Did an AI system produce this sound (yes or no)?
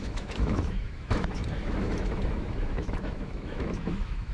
yes